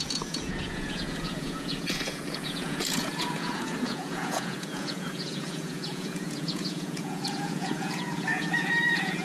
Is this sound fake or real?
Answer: fake